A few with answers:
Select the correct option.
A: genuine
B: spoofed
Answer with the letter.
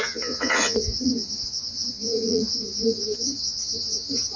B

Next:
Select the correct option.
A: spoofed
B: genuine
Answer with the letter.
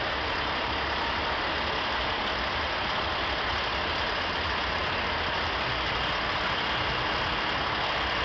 B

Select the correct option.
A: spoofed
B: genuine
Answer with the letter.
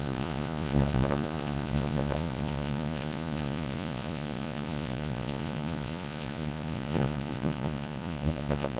A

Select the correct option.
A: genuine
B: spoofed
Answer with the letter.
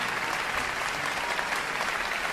A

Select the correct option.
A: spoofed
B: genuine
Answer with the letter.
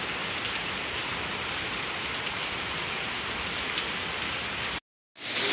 B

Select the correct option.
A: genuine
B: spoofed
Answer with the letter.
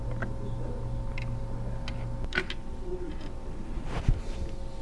A